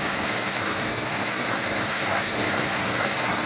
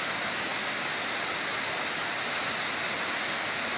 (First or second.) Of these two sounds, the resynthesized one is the first